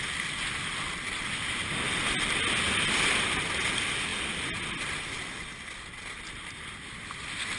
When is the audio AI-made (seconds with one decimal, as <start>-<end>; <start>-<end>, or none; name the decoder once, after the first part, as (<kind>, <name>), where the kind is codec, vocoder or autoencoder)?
none